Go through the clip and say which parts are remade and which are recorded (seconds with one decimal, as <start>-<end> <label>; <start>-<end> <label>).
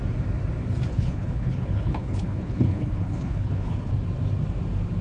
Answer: 0.0-0.9 recorded; 0.9-3.9 remade; 3.9-5.0 recorded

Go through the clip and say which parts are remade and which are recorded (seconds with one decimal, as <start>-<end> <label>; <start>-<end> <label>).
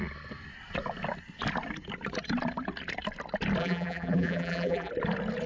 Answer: 0.0-3.6 recorded; 3.6-4.9 remade; 4.9-5.5 recorded